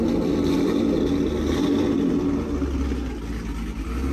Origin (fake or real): real